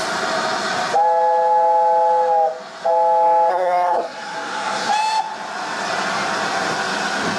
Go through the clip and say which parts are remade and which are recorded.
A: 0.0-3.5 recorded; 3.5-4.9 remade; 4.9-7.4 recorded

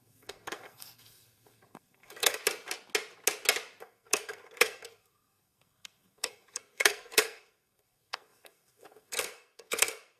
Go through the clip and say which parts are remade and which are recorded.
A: 0.0-2.4 remade; 2.4-3.8 recorded; 3.8-10.2 remade

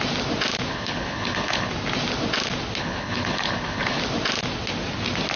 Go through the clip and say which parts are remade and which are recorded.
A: 0.0-0.7 recorded; 0.7-1.7 remade; 1.7-2.8 recorded; 2.8-4.0 remade; 4.0-5.4 recorded

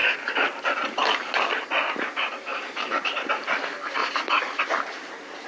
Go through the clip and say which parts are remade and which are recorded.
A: 0.0-2.5 recorded; 2.5-3.5 remade; 3.5-4.0 recorded; 4.0-4.6 remade; 4.6-5.5 recorded

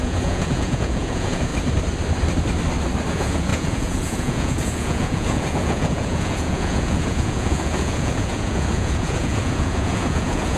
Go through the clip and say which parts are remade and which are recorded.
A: 0.0-1.5 remade; 1.5-3.1 recorded; 3.1-10.6 remade

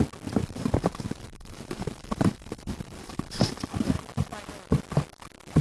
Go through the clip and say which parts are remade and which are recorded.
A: 0.0-0.4 recorded; 0.4-3.5 remade; 3.5-5.6 recorded

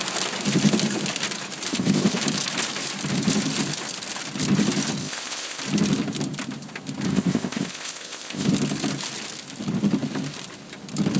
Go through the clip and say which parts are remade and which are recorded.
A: 0.0-1.7 recorded; 1.7-2.2 remade; 2.2-5.0 recorded; 5.0-5.6 remade; 5.6-7.1 recorded; 7.1-8.5 remade; 8.5-11.2 recorded